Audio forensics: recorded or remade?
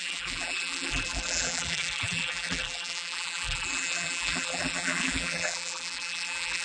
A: remade